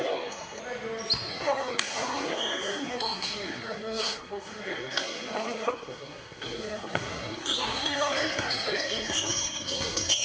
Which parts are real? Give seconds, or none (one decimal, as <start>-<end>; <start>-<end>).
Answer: 0.6-1.3